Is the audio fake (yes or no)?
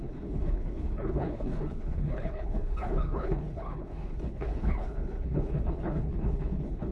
yes